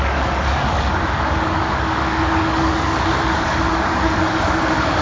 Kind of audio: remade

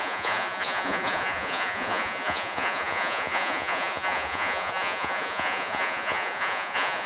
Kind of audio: remade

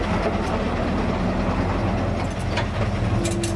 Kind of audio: recorded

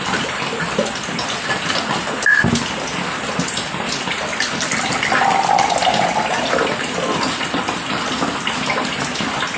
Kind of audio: recorded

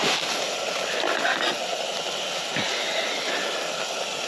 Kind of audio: recorded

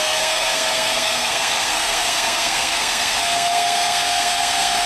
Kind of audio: remade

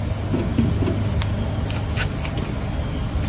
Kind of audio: recorded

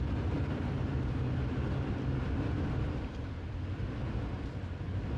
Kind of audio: remade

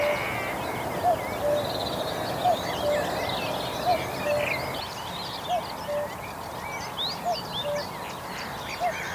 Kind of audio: recorded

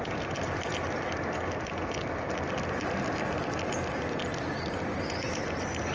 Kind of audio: recorded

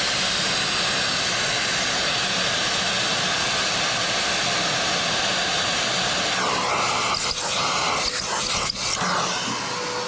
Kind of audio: recorded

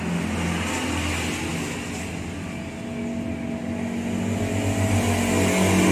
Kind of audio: recorded